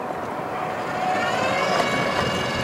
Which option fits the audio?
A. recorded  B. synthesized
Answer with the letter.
A